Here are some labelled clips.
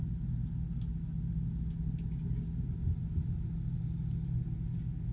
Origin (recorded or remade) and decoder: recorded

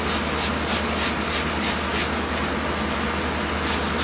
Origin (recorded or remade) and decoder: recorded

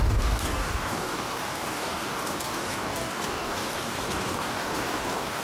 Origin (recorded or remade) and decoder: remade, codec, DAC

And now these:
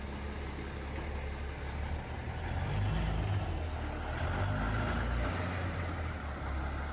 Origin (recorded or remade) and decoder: recorded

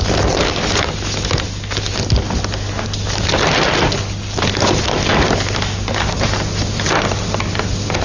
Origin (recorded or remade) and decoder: recorded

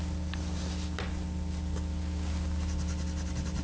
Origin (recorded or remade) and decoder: recorded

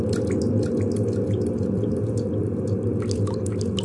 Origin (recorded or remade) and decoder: recorded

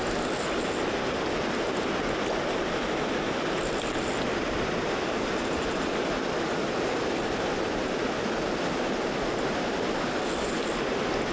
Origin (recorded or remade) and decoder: recorded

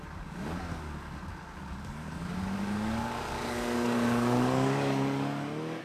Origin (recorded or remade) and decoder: remade, codec, DAC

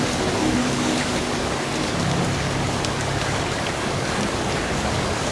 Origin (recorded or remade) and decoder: remade, codec, DAC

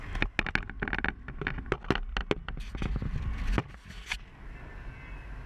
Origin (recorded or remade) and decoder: recorded